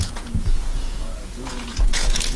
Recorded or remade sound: remade